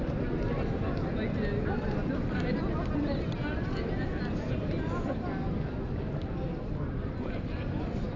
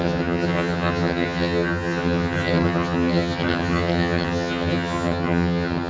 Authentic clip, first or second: first